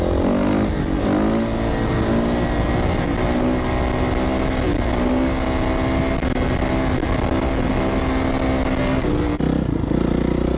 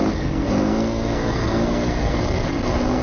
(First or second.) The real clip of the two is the first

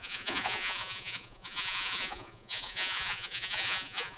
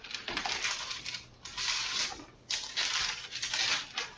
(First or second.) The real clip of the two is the second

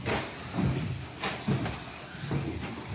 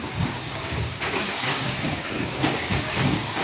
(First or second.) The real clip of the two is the first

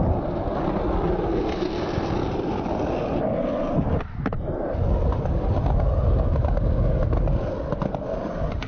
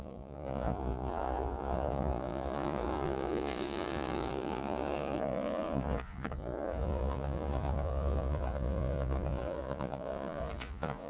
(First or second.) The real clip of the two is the first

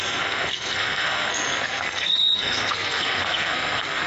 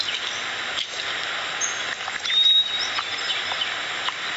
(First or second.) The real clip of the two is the second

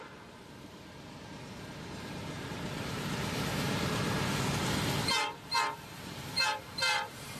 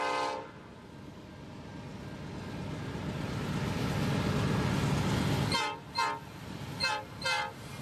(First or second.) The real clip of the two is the second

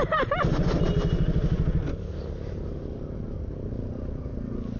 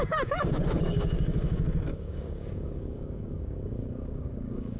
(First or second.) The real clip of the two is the first